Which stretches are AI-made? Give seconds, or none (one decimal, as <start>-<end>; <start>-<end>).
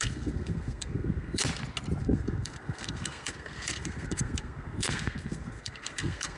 0.0-1.4; 2.0-6.4